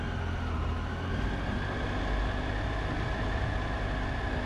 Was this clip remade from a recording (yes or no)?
no